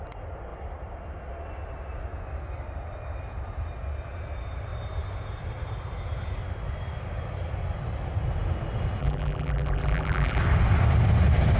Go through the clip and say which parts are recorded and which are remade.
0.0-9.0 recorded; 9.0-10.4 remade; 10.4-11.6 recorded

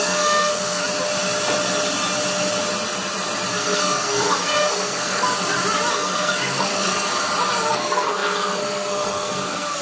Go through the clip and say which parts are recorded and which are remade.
0.0-0.8 remade; 0.8-3.5 recorded; 3.5-5.3 remade; 5.3-5.9 recorded; 5.9-7.1 remade; 7.1-7.7 recorded; 7.7-9.8 remade

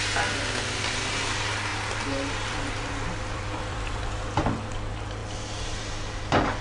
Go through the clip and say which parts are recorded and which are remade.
0.0-1.7 recorded; 1.7-4.7 remade; 4.7-5.2 recorded; 5.2-6.6 remade

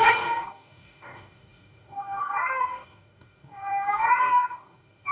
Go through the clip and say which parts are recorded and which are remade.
0.0-5.1 remade